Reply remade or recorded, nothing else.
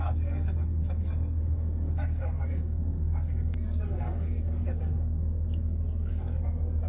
remade